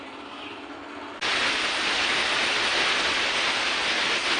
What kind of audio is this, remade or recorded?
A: recorded